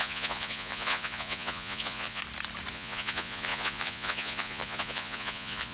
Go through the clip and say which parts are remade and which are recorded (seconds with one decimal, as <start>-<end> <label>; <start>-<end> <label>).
0.0-2.2 remade; 2.2-2.7 recorded; 2.7-5.7 remade